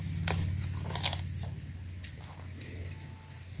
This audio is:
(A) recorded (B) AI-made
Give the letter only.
A